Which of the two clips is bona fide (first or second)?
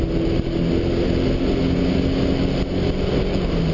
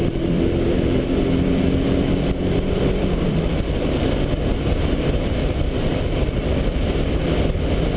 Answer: first